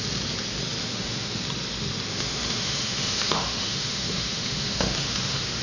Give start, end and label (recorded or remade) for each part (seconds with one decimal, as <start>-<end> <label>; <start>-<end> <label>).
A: 0.0-0.8 recorded; 0.8-1.4 remade; 1.4-2.1 recorded; 2.1-5.6 remade

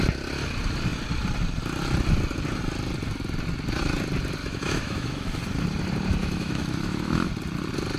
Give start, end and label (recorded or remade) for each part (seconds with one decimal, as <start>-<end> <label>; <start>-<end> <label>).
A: 0.0-4.4 recorded; 4.4-5.4 remade; 5.4-6.2 recorded; 6.2-7.3 remade; 7.3-8.0 recorded

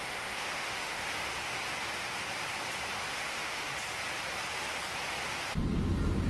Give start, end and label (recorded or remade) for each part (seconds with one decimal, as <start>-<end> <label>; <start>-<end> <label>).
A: 0.0-1.1 remade; 1.1-3.1 recorded; 3.1-3.7 remade; 3.7-6.3 recorded

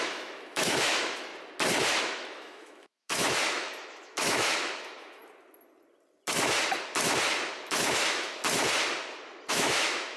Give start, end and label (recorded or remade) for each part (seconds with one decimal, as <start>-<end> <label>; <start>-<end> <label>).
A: 0.0-1.3 remade; 1.3-2.0 recorded; 2.0-5.2 remade; 5.2-7.7 recorded; 7.7-8.4 remade; 8.4-9.5 recorded; 9.5-10.2 remade

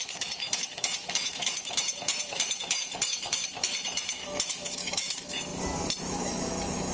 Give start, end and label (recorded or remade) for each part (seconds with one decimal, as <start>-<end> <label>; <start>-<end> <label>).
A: 0.0-5.5 remade; 5.5-6.0 recorded; 6.0-6.9 remade

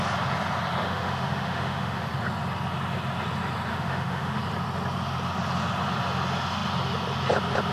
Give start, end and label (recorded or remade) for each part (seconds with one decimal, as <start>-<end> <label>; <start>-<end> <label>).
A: 0.0-0.8 recorded; 0.8-2.1 remade; 2.1-3.7 recorded; 3.7-4.4 remade; 4.4-7.7 recorded

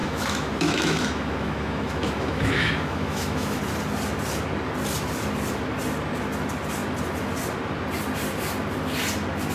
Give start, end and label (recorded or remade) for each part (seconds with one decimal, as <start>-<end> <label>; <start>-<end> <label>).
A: 0.0-3.6 remade; 3.6-9.5 recorded